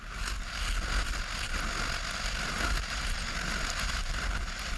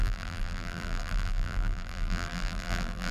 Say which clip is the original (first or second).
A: first